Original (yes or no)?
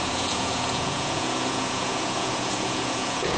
no